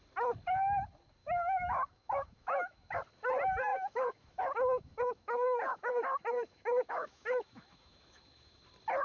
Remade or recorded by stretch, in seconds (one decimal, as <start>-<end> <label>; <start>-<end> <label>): 0.0-1.2 recorded; 1.2-3.0 remade; 3.0-3.7 recorded; 3.7-8.6 remade; 8.6-9.0 recorded